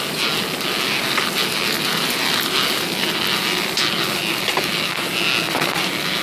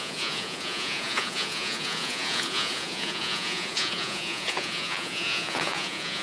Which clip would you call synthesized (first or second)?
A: second